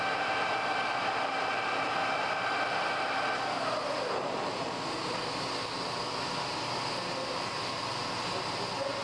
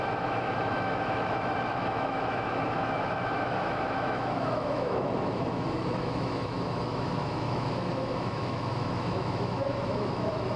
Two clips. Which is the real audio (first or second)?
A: first